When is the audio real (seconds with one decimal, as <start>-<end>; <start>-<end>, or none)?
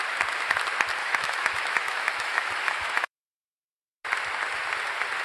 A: 0.0-1.0; 3.1-5.2